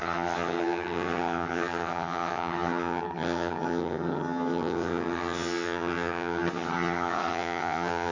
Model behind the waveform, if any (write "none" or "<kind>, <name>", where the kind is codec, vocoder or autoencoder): vocoder, HiFi-GAN